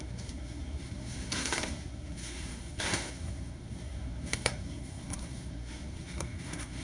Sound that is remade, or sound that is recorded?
remade